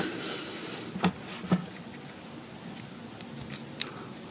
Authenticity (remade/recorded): recorded